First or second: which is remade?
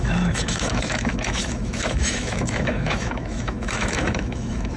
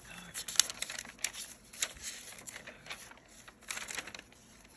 first